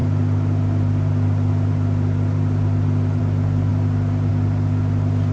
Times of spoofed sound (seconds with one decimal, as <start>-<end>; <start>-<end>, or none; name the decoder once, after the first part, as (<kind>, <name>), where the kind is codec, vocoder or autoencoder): none